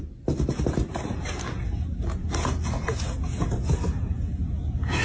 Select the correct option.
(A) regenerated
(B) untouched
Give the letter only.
B